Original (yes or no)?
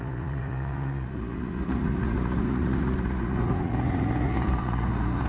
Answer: no